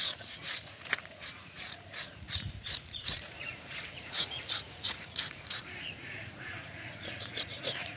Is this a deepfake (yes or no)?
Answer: yes